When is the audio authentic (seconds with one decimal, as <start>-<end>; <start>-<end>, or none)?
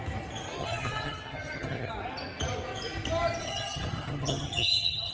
0.0-0.6; 1.9-3.4